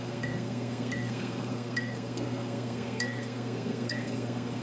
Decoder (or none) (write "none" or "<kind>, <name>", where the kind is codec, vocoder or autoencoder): codec, SNAC